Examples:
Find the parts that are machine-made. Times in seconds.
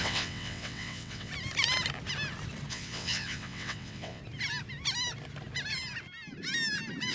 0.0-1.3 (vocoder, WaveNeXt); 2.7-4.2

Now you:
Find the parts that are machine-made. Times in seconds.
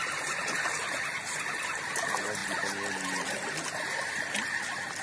none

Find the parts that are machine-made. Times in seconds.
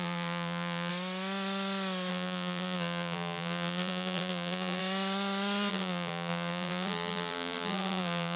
0.0-0.9 (vocoder, BigVGAN v2); 2.1-4.8; 5.7-8.4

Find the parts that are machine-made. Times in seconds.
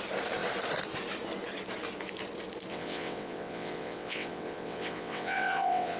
2.7-6.0 (vocoder, WaveNeXt)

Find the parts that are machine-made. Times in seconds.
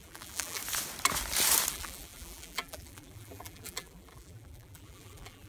0.0-0.6 (vocoder, BigVGAN v2); 1.7-5.5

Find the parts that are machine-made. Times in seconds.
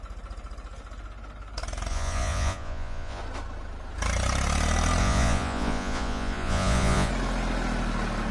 1.9-3.2 (vocoder, Vocos); 5.0-7.1